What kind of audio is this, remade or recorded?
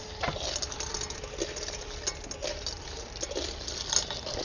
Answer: recorded